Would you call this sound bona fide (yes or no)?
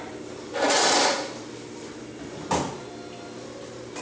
yes